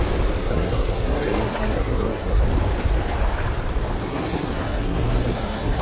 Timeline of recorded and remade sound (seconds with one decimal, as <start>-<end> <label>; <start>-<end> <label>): 0.0-0.4 recorded; 0.4-2.4 remade; 2.4-4.0 recorded; 4.0-5.8 remade